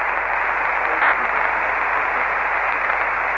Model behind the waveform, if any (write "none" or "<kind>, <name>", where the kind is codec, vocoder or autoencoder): none